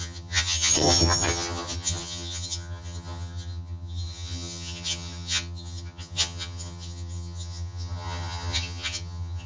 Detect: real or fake fake